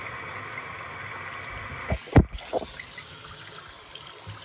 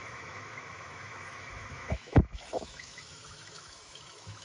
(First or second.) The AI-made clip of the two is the second